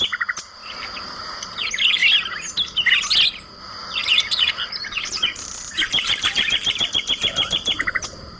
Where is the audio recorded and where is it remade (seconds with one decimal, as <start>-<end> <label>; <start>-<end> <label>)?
0.0-0.6 recorded; 0.6-1.4 remade; 1.4-4.0 recorded; 4.0-8.4 remade